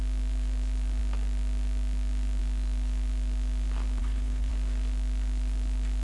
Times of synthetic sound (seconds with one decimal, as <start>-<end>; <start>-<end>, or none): 4.0-4.5